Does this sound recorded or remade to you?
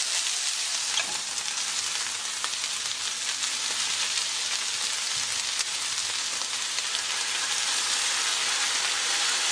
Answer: recorded